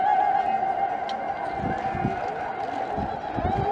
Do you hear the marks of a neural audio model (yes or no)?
no